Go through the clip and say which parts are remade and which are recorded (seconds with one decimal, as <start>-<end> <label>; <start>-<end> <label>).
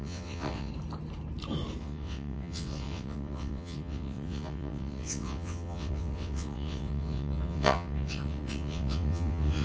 0.0-0.7 remade; 0.7-1.8 recorded; 1.8-9.6 remade